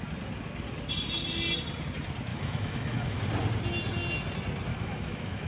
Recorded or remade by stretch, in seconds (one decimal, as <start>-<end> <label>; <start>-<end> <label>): 0.0-2.3 recorded; 2.3-3.2 remade; 3.2-4.7 recorded; 4.7-5.5 remade